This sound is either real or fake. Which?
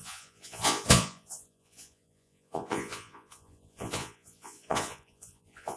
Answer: fake